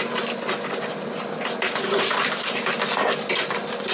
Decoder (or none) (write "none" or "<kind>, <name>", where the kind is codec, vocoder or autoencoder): none